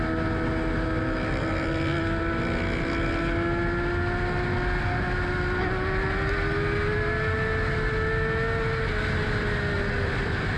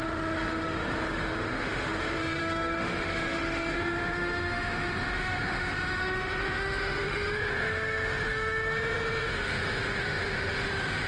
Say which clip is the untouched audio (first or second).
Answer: first